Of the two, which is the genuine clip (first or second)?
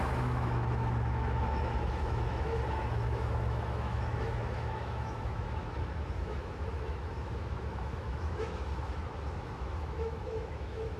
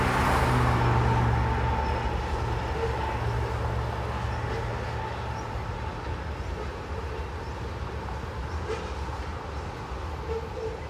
second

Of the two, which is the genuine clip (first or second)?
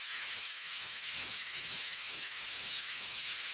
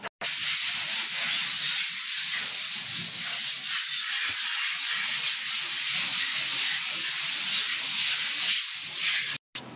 second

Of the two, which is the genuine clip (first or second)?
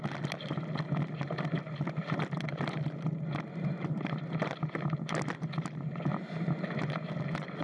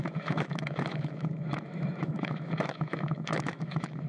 first